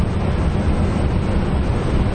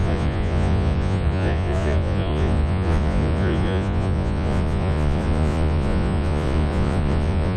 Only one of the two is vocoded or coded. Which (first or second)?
second